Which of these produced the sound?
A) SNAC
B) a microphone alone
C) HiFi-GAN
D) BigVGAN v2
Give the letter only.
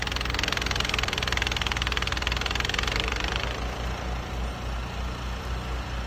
B